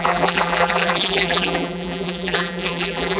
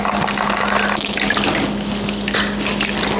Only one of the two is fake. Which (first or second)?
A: first